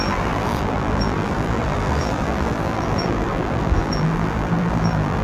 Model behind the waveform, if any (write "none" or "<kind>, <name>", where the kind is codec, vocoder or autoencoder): vocoder, BigVGAN v2